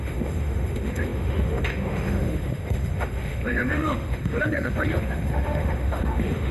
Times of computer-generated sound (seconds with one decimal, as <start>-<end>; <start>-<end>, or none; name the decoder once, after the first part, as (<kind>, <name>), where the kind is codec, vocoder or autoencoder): 0.0-6.5 (autoencoder, DAC-VAE)